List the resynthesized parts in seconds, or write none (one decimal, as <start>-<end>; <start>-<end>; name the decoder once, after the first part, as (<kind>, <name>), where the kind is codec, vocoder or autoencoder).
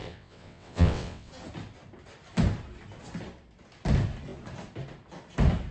0.0-1.3 (vocoder, WaveNeXt)